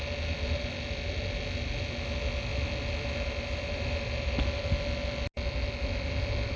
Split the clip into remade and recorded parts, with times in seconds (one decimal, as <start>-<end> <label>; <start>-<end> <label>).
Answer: 0.0-6.6 recorded